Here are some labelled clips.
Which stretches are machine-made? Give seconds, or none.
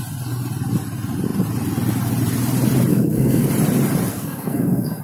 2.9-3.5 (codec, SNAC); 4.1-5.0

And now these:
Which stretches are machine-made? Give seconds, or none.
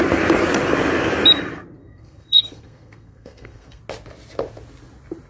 1.8-3.8 (codec, SNAC)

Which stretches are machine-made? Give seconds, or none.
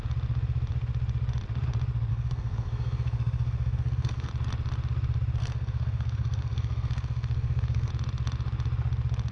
2.1-4.3 (codec, SNAC); 5.4-7.9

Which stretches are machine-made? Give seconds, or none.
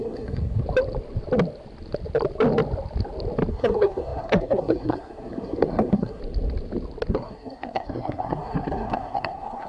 0.0-0.6 (codec, SNAC); 3.5-6.2; 7.1-9.7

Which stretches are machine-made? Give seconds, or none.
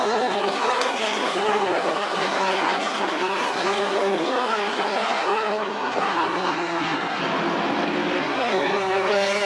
0.0-7.2 (codec, SNAC); 8.2-9.5